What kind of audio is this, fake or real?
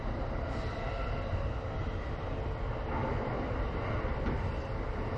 real